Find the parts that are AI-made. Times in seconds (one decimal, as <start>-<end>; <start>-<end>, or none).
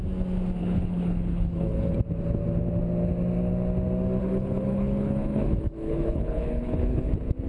0.6-1.9; 4.2-7.1